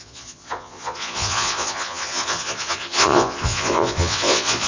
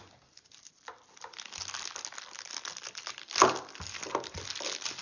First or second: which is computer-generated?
first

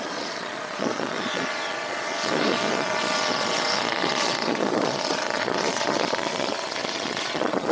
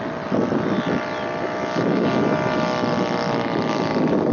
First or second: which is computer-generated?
first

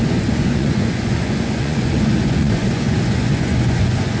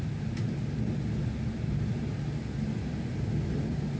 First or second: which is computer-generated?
first